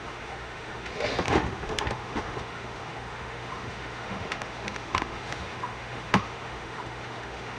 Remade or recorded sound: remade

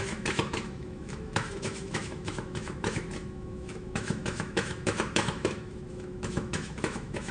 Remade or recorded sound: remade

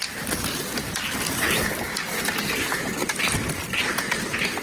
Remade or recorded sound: recorded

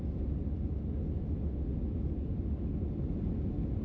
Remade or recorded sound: recorded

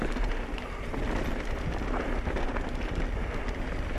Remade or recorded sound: recorded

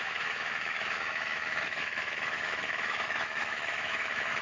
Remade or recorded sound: remade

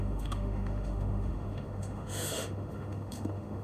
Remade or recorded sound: remade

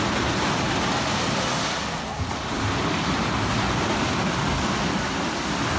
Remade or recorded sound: recorded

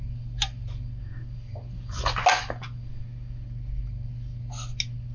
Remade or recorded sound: recorded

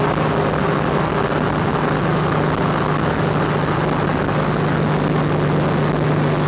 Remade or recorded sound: recorded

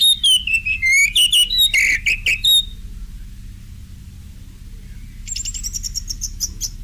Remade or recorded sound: recorded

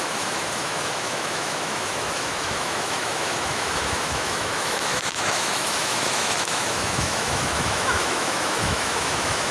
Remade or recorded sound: remade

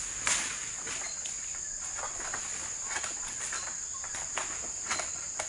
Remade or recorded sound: recorded